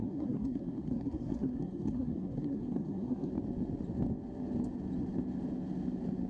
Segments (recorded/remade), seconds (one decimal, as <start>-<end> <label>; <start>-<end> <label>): 0.0-3.3 remade; 3.3-6.3 recorded